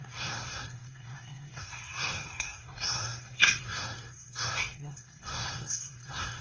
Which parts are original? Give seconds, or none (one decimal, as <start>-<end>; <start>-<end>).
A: none